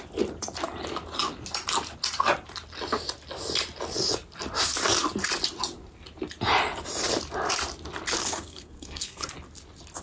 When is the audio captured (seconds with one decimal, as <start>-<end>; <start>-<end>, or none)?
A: 0.0-8.2; 9.3-10.0

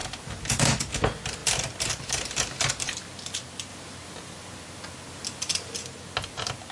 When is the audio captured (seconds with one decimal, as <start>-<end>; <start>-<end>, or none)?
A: 0.0-6.7

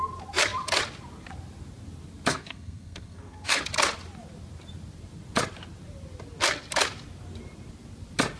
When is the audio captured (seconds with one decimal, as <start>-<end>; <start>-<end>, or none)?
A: 0.0-2.3; 3.6-8.4

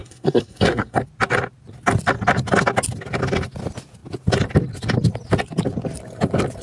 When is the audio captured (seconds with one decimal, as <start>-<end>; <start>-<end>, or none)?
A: 1.0-6.6

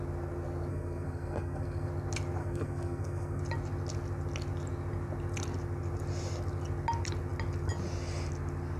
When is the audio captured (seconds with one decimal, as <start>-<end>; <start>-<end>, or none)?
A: 0.0-0.7; 1.9-2.4; 3.4-8.8

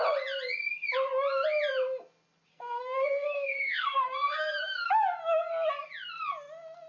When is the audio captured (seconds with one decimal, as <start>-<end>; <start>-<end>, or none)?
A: 0.0-2.5; 4.9-6.9

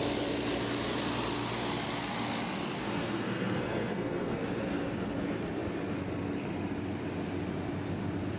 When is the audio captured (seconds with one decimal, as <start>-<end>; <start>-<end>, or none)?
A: 0.0-2.8; 4.4-8.4

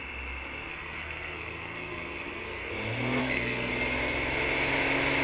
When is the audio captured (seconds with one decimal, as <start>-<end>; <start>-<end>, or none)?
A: 0.0-0.7; 2.7-3.2; 3.7-5.2